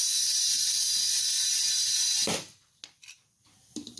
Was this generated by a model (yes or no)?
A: no